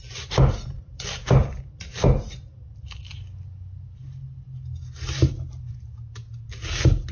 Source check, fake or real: real